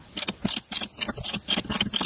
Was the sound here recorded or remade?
recorded